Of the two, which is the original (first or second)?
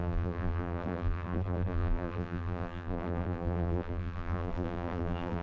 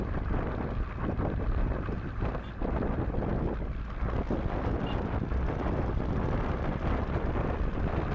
second